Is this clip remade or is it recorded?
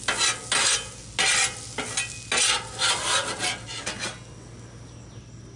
recorded